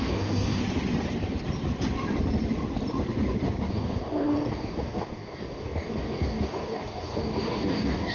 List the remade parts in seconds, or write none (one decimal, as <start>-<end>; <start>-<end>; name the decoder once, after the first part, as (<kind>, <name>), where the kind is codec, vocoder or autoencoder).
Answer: 0.0-0.6 (codec, DAC); 3.7-8.1